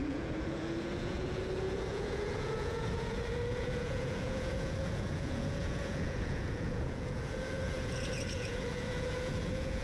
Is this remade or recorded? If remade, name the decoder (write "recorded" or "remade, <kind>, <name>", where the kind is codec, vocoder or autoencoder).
remade, vocoder, Vocos